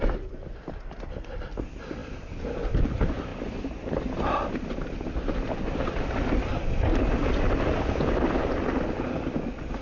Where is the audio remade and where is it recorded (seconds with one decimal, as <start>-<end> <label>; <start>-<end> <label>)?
0.0-9.8 recorded

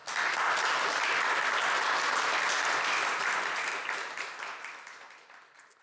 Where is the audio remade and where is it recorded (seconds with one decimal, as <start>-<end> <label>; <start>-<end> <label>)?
0.0-3.2 recorded; 3.2-3.7 remade; 3.7-5.8 recorded

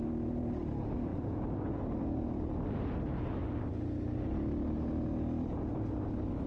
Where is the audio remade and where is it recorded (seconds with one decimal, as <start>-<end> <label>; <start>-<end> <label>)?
0.0-6.5 recorded

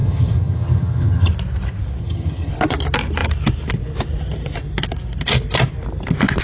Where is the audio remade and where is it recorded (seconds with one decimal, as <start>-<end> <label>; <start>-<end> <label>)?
0.0-1.3 remade; 1.3-2.0 recorded; 2.0-2.5 remade; 2.5-6.4 recorded

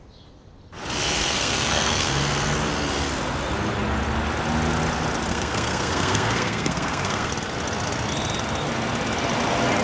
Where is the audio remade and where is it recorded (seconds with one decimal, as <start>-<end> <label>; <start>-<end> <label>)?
0.0-1.2 recorded; 1.2-2.1 remade; 2.1-5.3 recorded; 5.3-7.3 remade; 7.3-9.8 recorded

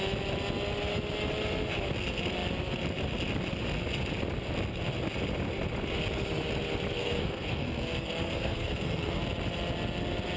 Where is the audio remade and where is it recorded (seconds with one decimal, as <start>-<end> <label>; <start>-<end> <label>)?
0.0-7.0 recorded; 7.0-9.2 remade; 9.2-10.4 recorded

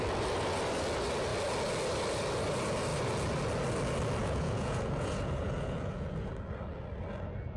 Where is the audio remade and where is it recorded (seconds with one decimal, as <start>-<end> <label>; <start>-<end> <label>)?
0.0-4.2 recorded; 4.2-6.3 remade; 6.3-7.6 recorded

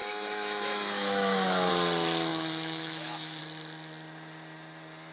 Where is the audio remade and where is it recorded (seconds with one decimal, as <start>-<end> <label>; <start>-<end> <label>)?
0.0-1.7 remade; 1.7-2.3 recorded; 2.3-3.4 remade; 3.4-5.1 recorded